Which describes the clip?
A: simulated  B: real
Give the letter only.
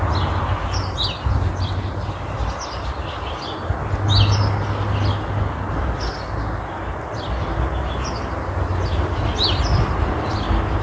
B